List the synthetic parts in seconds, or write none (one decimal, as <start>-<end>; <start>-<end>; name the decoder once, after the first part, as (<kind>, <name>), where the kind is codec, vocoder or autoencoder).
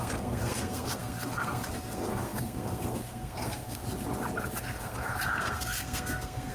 0.0-3.8 (codec, SNAC); 4.6-6.5